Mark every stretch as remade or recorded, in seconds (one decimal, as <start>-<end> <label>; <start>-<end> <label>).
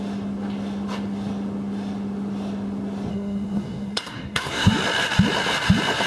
0.0-3.1 recorded; 3.1-4.7 remade; 4.7-6.1 recorded